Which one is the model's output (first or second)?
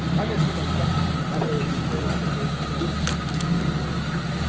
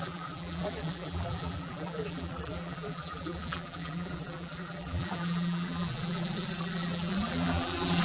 second